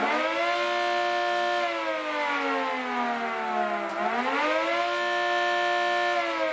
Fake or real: real